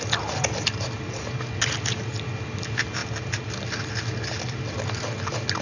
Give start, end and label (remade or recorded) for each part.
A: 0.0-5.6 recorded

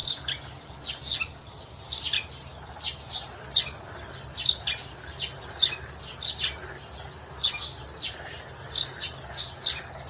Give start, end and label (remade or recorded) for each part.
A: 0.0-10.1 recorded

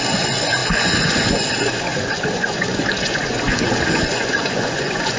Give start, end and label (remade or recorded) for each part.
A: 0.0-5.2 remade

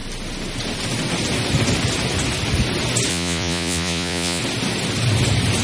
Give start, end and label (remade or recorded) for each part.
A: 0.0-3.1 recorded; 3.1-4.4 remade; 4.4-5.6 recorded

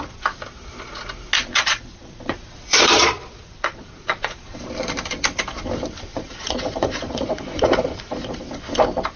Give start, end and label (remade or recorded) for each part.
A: 0.0-1.5 recorded; 1.5-4.7 remade; 4.7-6.1 recorded; 6.1-8.3 remade; 8.3-9.2 recorded

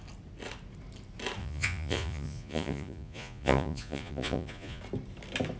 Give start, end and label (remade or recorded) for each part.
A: 0.0-1.4 recorded; 1.4-4.8 remade; 4.8-5.6 recorded

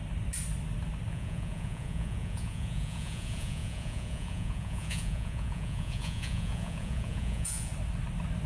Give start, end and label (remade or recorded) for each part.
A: 0.0-1.1 recorded; 1.1-7.7 remade; 7.7-8.5 recorded

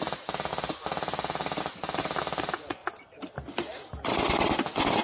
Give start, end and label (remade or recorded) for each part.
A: 0.0-5.0 recorded